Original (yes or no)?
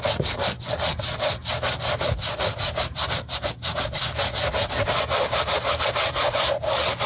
yes